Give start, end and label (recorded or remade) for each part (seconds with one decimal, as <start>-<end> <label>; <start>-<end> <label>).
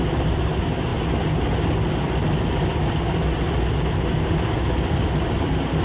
0.0-5.8 recorded